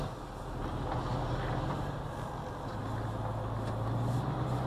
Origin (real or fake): real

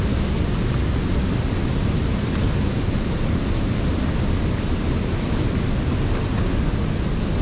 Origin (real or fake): real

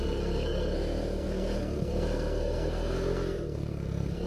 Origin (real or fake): fake